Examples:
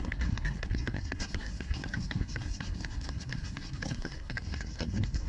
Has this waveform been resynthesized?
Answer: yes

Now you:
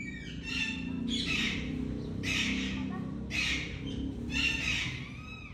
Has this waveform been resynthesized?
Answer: no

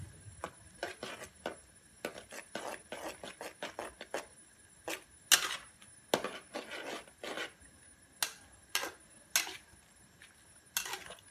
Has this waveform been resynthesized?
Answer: no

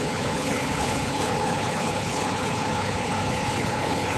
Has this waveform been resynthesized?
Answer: yes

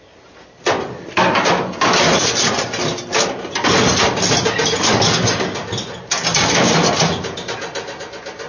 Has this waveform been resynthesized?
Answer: no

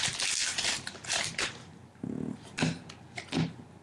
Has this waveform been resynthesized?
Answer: no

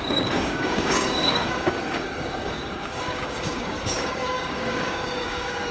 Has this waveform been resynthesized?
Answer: yes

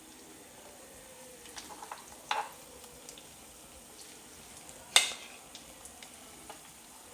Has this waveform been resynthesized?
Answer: no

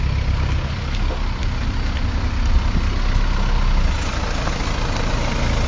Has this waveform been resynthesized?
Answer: no